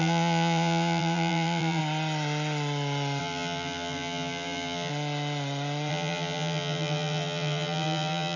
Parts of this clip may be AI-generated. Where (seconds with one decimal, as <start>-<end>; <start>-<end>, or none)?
0.0-1.8; 3.2-4.9; 5.9-8.4